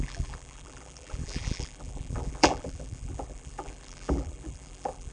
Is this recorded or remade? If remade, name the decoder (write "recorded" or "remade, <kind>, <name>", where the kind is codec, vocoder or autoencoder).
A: remade, vocoder, BigVGAN v2